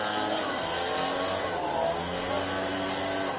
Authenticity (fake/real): real